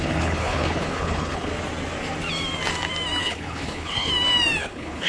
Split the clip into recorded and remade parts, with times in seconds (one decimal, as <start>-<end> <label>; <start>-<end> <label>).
0.0-1.5 remade; 1.5-3.2 recorded; 3.2-4.1 remade; 4.1-4.6 recorded; 4.6-5.1 remade